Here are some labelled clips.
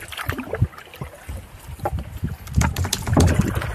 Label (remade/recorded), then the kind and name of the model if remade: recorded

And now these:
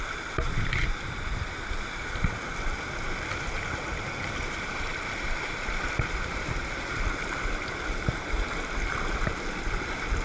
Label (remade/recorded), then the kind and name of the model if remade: recorded